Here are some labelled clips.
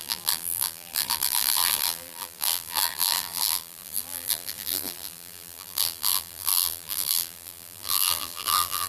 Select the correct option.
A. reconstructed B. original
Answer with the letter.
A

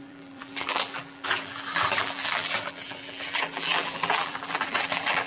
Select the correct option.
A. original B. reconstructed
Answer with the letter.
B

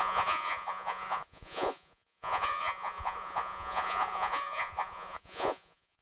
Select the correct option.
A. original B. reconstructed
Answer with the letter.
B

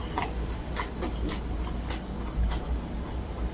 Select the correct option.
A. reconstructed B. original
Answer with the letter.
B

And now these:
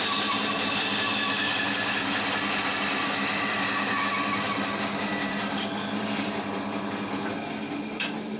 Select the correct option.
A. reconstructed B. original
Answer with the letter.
A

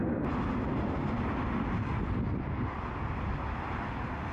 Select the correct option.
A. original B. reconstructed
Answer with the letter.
A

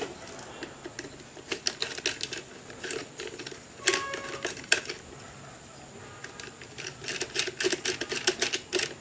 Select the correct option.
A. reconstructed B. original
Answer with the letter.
B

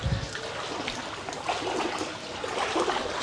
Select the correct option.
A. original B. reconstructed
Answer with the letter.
A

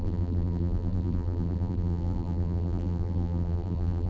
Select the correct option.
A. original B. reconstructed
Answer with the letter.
B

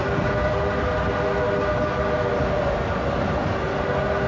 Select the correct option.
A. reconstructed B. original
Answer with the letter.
B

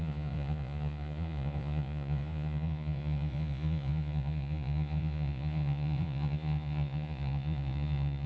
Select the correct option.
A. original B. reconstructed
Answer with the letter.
B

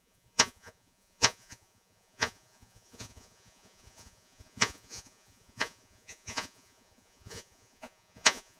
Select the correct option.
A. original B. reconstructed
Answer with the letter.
B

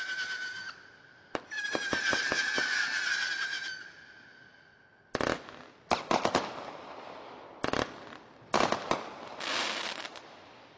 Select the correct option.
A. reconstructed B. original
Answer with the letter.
B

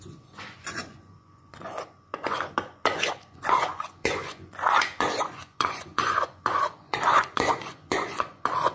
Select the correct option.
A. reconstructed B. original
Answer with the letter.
A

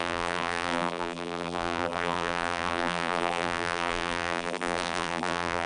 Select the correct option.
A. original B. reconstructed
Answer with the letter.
B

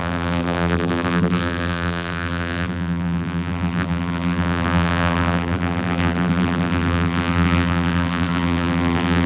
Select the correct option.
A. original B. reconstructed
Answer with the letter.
B